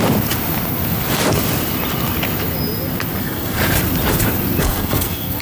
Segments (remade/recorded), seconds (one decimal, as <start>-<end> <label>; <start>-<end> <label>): 0.0-3.2 recorded; 3.2-3.6 remade; 3.6-4.6 recorded; 4.6-5.4 remade